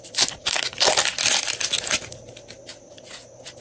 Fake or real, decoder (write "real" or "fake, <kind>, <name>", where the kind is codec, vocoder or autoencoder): real